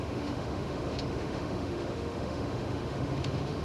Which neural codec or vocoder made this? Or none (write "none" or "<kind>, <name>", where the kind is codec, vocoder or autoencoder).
autoencoder, DAC-VAE